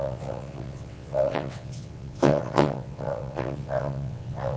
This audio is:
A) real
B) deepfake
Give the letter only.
B